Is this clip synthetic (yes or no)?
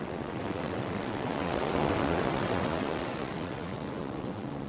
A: yes